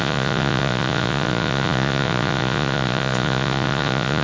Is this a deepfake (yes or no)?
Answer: yes